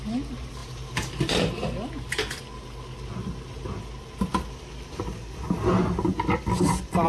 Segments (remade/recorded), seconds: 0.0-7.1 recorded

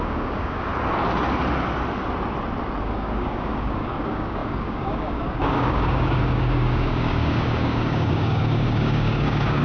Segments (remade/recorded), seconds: 0.0-0.7 remade; 0.7-2.8 recorded; 2.8-9.6 remade

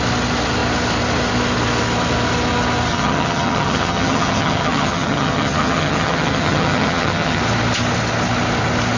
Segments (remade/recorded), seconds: 0.0-2.9 recorded; 2.9-7.4 remade; 7.4-9.0 recorded

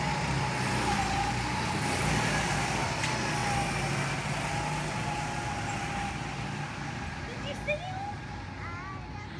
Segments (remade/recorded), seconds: 0.0-9.4 recorded

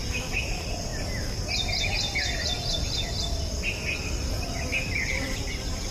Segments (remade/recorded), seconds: 0.0-5.9 recorded

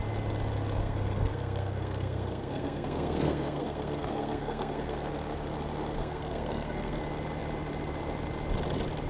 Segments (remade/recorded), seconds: 0.0-0.8 recorded; 0.8-5.1 remade; 5.1-6.0 recorded; 6.0-7.0 remade; 7.0-9.1 recorded